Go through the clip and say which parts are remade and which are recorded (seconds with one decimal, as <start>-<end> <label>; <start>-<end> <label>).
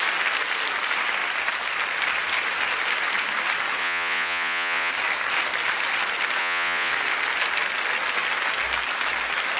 0.0-3.8 recorded; 3.8-4.9 remade; 4.9-6.4 recorded; 6.4-6.9 remade; 6.9-9.6 recorded